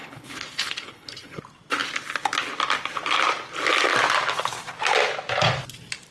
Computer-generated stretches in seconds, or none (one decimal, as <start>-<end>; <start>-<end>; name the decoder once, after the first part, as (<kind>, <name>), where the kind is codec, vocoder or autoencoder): 0.0-1.4 (codec, HILCodec)